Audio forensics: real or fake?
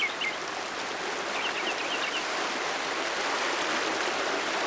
real